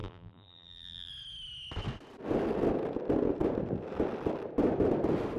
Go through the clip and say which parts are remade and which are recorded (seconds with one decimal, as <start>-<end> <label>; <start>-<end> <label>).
0.0-1.1 remade; 1.1-5.4 recorded